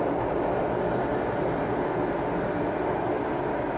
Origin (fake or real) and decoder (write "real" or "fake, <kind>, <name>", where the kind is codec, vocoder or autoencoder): real